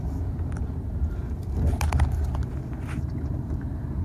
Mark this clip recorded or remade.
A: remade